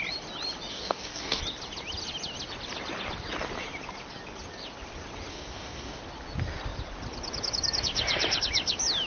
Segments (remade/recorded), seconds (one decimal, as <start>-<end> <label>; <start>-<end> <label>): 0.0-0.7 recorded; 0.7-1.4 remade; 1.4-5.3 recorded; 5.3-6.0 remade; 6.0-9.1 recorded